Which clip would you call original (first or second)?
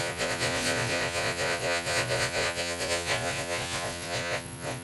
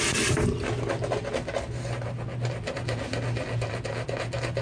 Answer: second